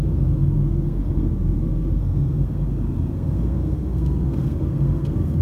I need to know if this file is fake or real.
fake